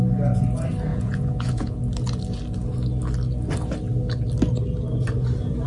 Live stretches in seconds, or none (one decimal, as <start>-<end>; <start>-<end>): 0.0-0.9; 1.8-5.7